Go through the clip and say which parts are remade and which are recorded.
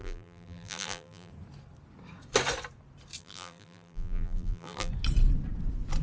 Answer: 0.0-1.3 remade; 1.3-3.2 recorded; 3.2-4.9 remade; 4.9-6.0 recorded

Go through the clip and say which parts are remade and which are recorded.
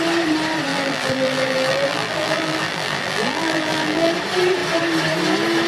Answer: 0.0-0.7 recorded; 0.7-4.1 remade; 4.1-5.7 recorded